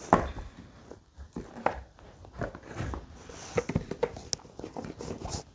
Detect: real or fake real